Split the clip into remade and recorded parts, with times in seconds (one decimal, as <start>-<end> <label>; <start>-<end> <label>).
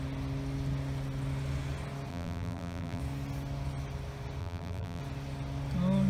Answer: 0.0-2.1 recorded; 2.1-3.0 remade; 3.0-4.4 recorded; 4.4-5.0 remade; 5.0-6.1 recorded